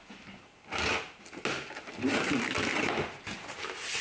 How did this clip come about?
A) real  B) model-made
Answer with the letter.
A